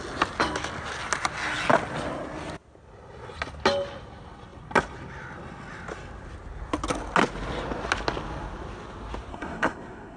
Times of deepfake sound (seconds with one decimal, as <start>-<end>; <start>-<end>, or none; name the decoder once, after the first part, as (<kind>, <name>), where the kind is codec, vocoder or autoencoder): 9.3-10.2 (codec, SNAC)